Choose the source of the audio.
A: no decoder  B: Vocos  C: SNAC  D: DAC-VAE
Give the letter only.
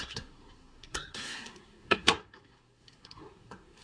C